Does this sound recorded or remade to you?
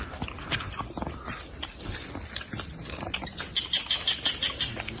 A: recorded